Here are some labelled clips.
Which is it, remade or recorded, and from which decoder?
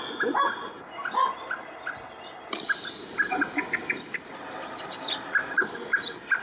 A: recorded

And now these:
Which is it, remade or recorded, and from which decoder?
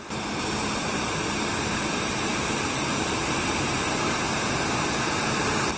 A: remade, vocoder, BigVGAN v2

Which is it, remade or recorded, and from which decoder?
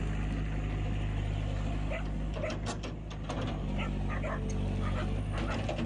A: recorded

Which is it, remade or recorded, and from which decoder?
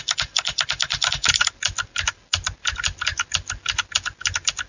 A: recorded